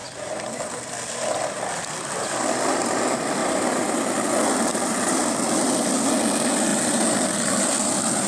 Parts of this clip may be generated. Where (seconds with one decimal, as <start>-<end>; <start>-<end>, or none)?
0.0-2.8; 3.4-4.0; 4.7-5.3; 6.7-8.3